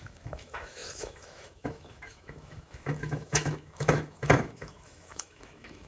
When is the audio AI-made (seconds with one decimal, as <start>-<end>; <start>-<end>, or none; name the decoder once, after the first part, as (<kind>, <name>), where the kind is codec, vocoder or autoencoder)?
0.0-5.9 (autoencoder, DAC-VAE)